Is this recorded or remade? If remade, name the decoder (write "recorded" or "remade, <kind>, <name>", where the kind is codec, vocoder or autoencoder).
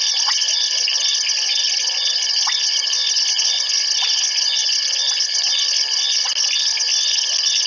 recorded